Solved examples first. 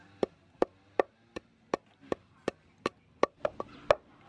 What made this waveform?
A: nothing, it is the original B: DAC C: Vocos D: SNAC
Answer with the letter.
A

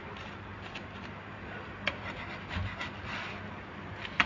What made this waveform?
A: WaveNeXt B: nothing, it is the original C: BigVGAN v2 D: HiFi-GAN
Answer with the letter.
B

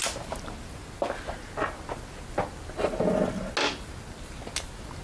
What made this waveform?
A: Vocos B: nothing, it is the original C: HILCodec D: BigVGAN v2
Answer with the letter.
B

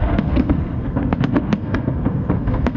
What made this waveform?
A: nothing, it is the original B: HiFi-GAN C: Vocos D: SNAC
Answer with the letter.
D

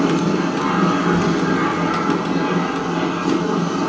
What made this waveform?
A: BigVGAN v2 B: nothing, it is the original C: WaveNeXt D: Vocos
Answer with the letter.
B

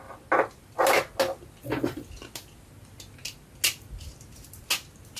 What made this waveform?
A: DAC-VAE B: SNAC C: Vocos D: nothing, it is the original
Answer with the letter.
D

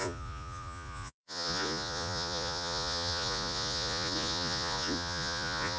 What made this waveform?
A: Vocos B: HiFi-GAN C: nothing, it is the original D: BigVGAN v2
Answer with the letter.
A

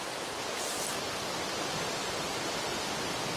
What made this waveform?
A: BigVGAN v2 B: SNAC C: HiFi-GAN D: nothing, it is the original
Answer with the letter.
D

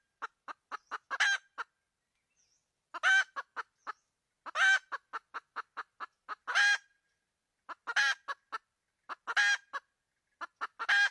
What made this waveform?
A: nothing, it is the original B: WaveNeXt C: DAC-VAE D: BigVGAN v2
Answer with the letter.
A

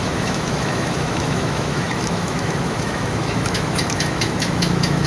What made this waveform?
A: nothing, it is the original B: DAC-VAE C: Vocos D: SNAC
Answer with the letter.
B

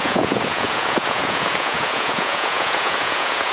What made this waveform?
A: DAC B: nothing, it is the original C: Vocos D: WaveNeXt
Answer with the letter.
C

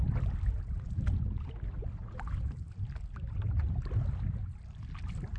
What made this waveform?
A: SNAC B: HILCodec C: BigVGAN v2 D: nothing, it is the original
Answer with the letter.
D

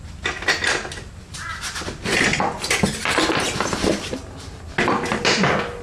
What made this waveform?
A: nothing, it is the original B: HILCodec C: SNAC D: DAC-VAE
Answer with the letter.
A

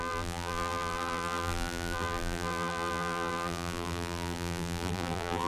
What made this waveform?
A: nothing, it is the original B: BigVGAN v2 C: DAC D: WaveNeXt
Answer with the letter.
B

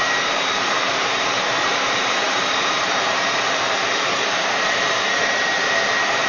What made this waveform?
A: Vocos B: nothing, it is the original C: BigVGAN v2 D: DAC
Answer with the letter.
C